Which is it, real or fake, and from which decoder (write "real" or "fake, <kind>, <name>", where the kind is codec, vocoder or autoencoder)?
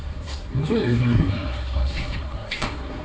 fake, codec, SNAC